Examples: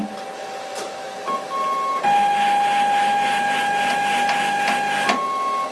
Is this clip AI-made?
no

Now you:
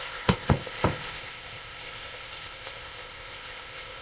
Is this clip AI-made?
yes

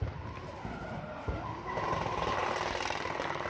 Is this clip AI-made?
no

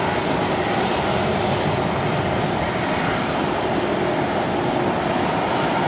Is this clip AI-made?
no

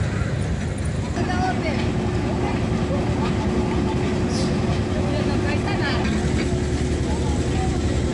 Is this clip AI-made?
no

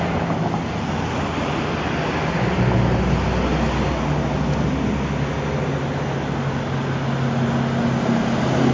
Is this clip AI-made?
no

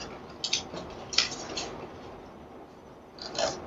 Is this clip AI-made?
no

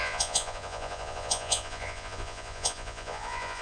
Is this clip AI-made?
yes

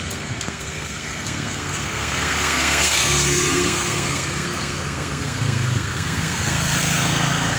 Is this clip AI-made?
yes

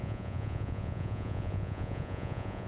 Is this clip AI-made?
yes